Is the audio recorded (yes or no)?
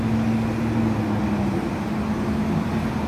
yes